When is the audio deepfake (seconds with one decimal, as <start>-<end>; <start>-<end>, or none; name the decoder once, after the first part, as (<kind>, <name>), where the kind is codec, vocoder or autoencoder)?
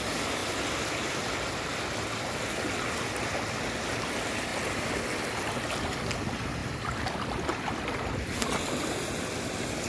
4.5-5.0 (vocoder, BigVGAN v2); 6.6-8.7